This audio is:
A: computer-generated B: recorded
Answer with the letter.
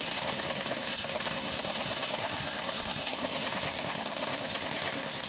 A